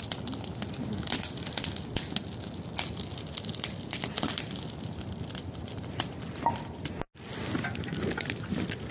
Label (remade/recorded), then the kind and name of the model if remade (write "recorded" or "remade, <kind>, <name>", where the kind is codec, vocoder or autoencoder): recorded